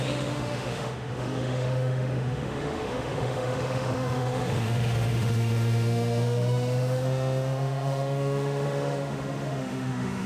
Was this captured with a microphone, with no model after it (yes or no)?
no